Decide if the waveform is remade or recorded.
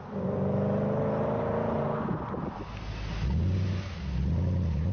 recorded